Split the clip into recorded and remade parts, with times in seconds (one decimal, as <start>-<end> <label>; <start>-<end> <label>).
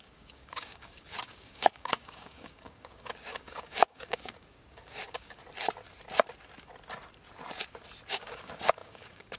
0.0-5.4 remade; 5.4-8.1 recorded; 8.1-9.4 remade